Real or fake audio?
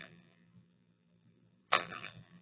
fake